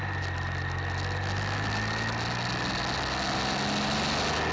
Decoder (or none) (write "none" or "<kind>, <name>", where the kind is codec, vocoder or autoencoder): none